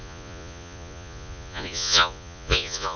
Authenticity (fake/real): fake